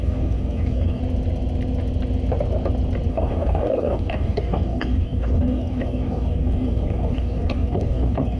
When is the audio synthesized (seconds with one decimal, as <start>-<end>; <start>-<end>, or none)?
0.0-1.0; 3.1-8.4